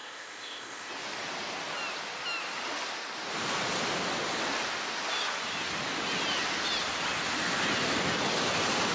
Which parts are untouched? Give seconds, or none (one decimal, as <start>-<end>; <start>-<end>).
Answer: 0.9-8.9